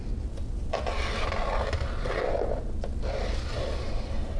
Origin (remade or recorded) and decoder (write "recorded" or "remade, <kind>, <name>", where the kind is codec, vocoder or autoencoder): recorded